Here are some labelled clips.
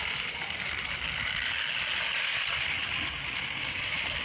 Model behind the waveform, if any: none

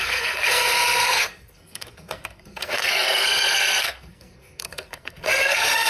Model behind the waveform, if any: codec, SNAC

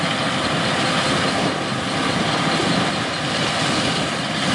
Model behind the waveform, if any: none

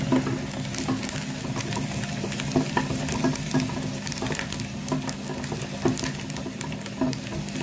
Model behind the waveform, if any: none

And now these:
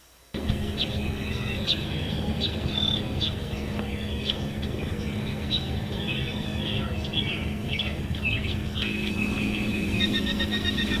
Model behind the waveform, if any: codec, SNAC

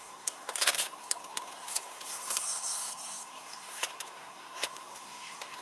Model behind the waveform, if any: codec, SNAC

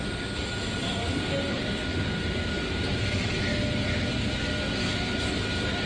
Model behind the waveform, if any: none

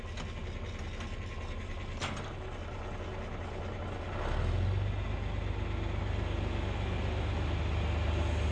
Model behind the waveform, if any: none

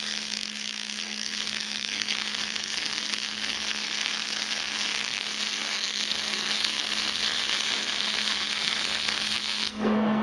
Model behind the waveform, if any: codec, SNAC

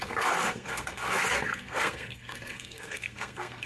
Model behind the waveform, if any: codec, SNAC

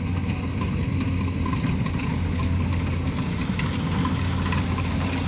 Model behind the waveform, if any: none